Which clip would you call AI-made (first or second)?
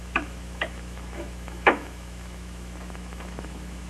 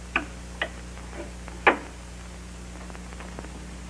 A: first